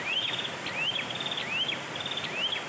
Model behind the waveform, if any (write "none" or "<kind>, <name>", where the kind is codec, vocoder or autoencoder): none